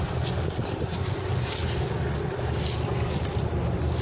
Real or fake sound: real